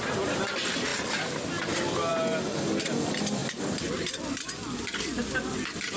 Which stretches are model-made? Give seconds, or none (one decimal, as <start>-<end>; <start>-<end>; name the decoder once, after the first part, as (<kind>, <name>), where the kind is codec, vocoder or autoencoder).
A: none